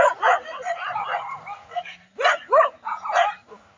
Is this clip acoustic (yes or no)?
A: yes